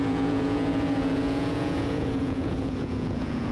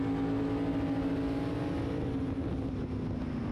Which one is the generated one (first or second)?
first